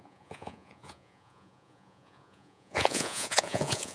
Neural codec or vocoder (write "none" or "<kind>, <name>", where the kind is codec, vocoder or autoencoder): vocoder, Vocos